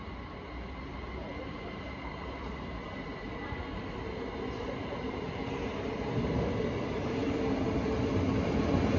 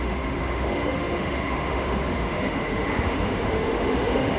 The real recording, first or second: first